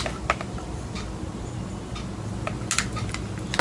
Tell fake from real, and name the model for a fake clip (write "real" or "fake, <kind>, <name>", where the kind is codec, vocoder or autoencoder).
real